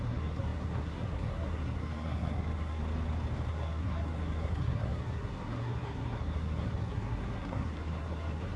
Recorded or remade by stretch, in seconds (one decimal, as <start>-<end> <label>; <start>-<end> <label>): 0.0-2.8 remade; 2.8-3.5 recorded; 3.5-8.6 remade